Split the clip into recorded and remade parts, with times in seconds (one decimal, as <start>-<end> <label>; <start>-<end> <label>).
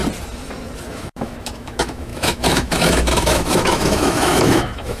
0.0-0.9 recorded; 0.9-5.0 remade